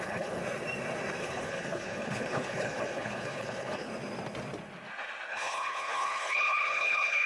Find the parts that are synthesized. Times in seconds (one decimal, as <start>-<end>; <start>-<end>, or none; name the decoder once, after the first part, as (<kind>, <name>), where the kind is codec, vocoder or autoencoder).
0.0-0.4 (codec, HILCodec); 1.2-3.9; 5.3-7.3